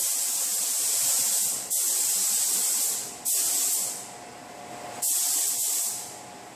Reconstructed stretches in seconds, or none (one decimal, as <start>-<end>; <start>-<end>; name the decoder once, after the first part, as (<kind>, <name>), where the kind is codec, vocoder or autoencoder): none